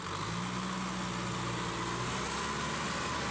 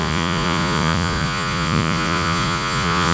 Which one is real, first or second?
first